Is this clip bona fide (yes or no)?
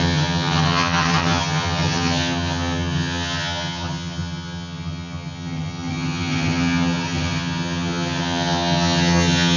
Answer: no